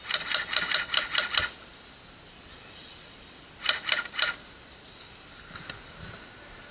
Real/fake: real